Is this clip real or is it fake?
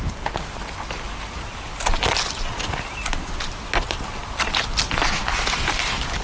real